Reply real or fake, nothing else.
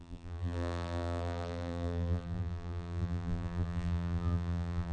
fake